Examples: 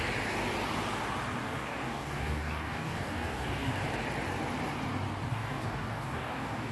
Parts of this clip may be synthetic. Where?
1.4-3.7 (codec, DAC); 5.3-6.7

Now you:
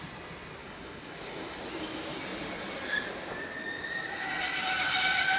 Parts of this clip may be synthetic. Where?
0.6-1.6 (codec, DAC)

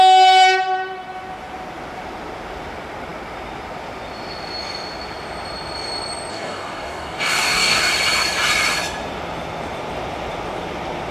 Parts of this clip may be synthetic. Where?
6.3-7.9 (codec, DAC)

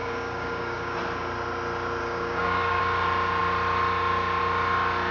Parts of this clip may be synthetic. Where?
0.0-1.0 (codec, DAC); 2.0-2.8

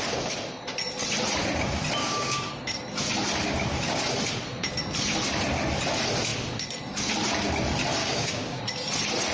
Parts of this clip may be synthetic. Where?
2.0-2.5 (codec, DAC); 8.0-8.6

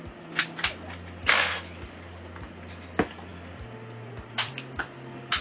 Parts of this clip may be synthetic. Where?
none

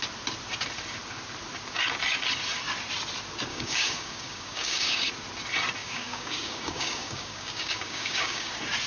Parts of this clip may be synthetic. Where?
3.5-5.1 (codec, DAC); 5.8-8.5

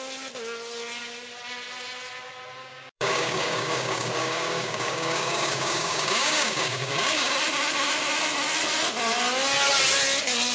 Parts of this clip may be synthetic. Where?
2.6-7.3 (codec, DAC)